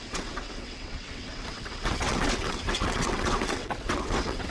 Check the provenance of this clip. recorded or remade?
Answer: remade